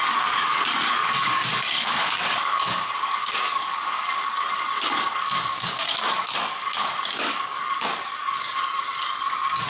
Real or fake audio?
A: fake